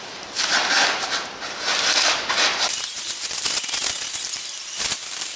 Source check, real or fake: real